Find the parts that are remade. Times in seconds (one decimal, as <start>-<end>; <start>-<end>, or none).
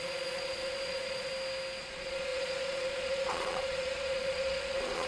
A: 0.0-1.3; 1.8-5.1